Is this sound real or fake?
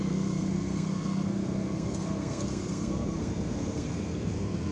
fake